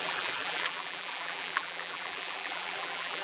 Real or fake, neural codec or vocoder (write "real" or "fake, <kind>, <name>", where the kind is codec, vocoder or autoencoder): fake, vocoder, BigVGAN v2